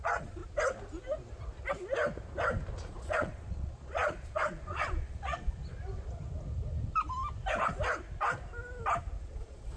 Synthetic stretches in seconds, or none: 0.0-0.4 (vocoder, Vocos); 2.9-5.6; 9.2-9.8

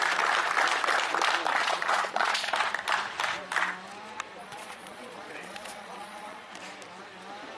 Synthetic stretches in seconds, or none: 1.6-2.5 (vocoder, Vocos); 4.4-6.5

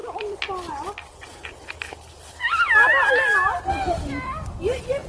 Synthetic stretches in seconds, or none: none

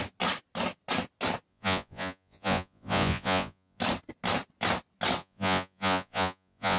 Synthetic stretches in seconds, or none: 1.5-3.8 (vocoder, Vocos); 5.2-6.8

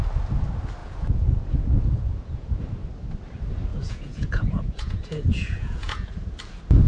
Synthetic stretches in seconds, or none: 0.8-2.6 (vocoder, Vocos); 3.7-6.1